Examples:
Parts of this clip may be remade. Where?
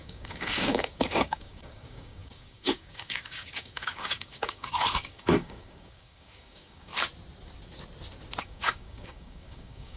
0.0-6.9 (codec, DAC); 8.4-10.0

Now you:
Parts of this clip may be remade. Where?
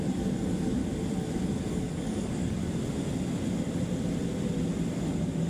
0.0-0.8 (codec, DAC); 1.6-2.6; 5.0-5.5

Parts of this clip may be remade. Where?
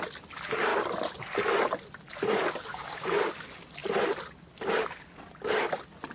2.7-3.3 (codec, DAC)